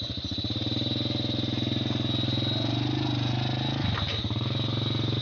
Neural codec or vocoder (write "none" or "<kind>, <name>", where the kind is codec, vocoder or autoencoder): none